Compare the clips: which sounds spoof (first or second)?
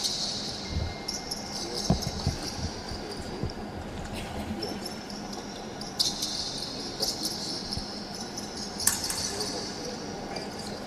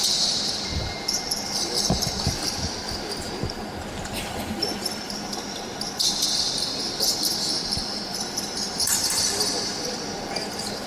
second